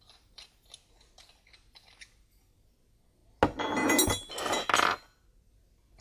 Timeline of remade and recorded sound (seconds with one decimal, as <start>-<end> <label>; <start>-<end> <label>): 0.0-6.0 recorded